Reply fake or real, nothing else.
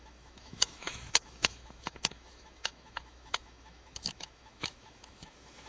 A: fake